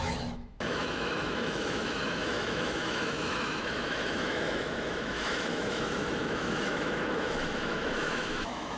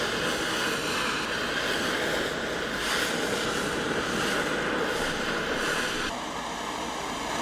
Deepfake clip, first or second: first